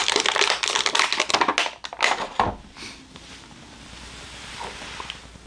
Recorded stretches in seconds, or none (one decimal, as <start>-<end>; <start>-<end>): 0.0-5.5